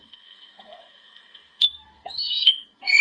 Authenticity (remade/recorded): remade